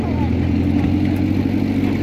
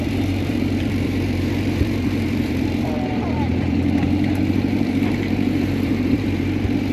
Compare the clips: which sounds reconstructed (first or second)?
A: second